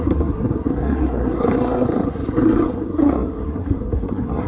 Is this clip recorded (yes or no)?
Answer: no